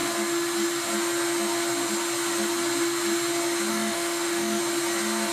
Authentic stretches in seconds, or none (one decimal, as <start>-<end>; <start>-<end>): 0.0-3.7; 4.6-5.3